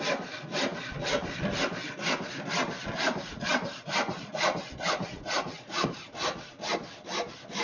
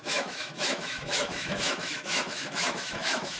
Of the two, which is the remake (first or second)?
second